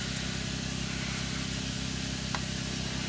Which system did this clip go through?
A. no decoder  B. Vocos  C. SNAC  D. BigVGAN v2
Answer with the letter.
A